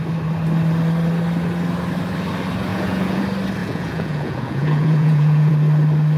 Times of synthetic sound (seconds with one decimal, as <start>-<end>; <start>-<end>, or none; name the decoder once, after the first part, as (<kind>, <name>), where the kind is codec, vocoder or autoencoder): 2.7-3.2 (vocoder, Vocos); 3.6-5.5